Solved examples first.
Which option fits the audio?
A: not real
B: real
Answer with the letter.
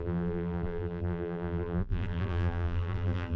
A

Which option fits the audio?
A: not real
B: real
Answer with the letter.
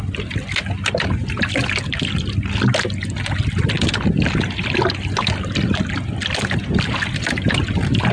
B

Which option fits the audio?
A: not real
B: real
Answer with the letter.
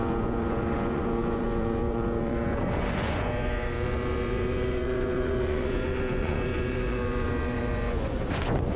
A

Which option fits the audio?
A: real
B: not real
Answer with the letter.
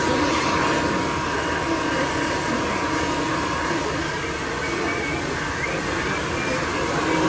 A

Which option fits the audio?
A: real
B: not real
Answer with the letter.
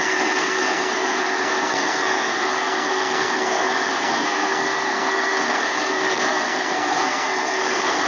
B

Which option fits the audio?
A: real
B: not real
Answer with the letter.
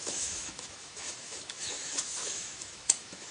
B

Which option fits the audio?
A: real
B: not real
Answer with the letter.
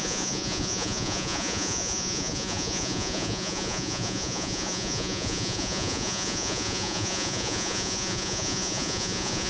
B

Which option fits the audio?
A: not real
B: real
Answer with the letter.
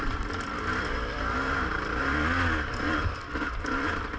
B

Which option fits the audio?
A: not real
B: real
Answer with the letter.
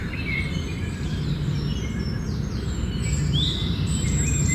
A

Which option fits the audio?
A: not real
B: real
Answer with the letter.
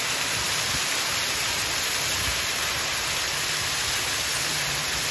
B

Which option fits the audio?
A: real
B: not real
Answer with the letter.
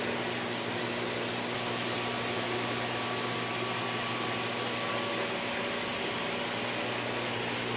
B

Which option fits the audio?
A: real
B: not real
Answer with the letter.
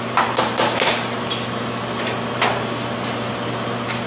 A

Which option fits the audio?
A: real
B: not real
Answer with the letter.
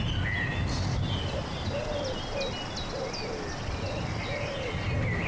A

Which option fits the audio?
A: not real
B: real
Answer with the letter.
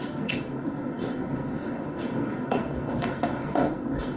A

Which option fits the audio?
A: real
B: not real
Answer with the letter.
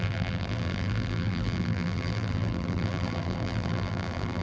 B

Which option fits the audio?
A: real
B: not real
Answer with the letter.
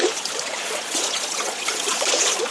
B